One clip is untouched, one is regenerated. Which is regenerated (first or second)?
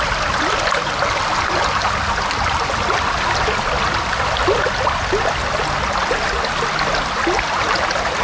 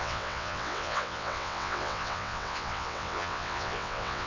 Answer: second